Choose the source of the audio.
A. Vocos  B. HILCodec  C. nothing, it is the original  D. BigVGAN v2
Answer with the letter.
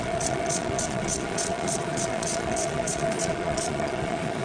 A